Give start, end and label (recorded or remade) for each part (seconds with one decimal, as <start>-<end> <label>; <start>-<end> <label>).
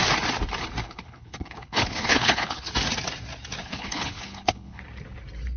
0.0-0.8 recorded; 0.8-2.7 remade; 2.7-3.6 recorded; 3.6-4.8 remade; 4.8-5.6 recorded